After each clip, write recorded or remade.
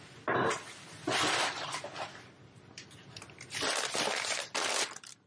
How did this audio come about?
remade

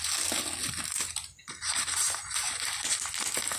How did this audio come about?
recorded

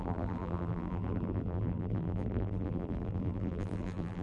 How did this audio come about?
remade